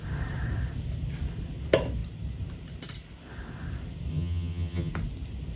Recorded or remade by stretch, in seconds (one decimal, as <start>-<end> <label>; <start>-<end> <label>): 0.0-4.1 recorded; 4.1-4.9 remade; 4.9-5.5 recorded